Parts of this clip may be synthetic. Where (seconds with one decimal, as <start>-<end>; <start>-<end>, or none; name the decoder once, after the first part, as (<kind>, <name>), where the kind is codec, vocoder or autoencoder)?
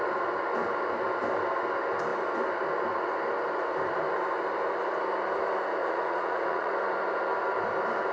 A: 5.8-6.7 (vocoder, Vocos)